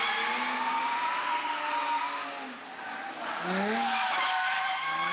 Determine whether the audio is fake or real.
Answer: real